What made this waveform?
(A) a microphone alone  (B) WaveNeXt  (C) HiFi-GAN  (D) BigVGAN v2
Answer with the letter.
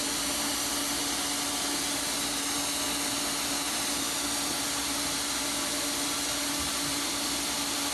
A